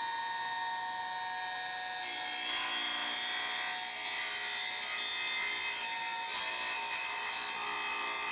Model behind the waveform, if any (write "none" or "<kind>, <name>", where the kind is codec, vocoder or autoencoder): none